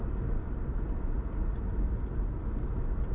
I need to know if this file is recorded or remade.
remade